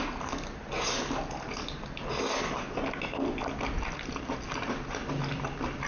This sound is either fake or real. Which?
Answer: real